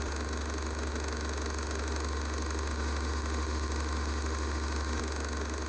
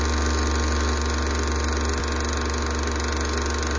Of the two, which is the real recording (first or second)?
second